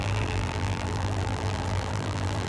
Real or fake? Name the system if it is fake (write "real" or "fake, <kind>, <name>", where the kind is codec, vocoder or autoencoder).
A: fake, vocoder, BigVGAN v2